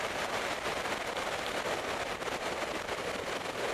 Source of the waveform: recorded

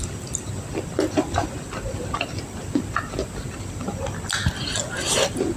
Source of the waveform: recorded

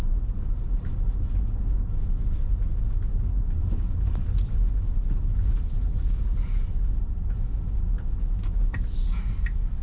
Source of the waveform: recorded